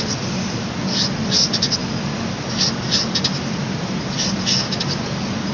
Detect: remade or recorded recorded